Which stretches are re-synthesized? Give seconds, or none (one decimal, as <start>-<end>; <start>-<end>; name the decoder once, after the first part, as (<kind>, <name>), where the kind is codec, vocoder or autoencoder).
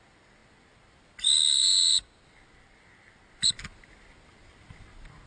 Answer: none